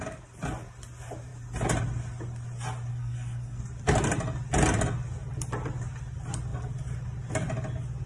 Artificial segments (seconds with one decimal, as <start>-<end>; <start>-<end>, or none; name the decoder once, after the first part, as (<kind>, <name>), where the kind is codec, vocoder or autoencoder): 2.9-3.6 (codec, SNAC)